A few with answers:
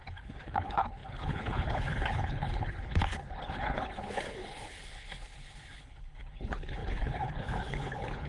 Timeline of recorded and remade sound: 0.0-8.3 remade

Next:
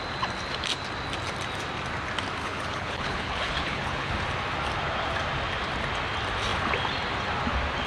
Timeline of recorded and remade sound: 0.0-2.4 recorded; 2.4-4.1 remade; 4.1-7.9 recorded

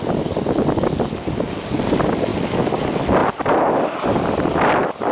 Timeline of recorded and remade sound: 0.0-5.1 recorded